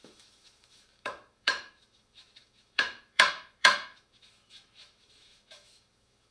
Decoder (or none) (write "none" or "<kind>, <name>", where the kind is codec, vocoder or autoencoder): autoencoder, DAC-VAE